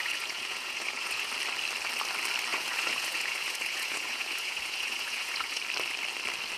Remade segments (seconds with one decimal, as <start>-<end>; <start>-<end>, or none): 0.0-1.3; 2.5-5.6